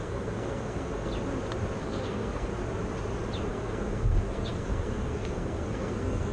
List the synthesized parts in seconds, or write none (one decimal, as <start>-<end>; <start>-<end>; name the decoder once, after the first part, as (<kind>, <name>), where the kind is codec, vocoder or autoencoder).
0.0-1.1 (codec, SNAC); 1.8-2.5; 3.5-6.3